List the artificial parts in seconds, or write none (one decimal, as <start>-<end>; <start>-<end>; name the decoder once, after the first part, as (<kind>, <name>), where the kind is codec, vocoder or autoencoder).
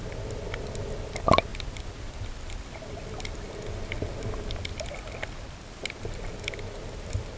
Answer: none